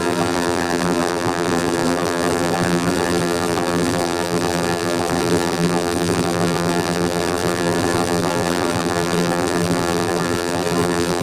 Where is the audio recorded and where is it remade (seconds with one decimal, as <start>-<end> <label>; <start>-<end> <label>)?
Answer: 0.0-11.2 remade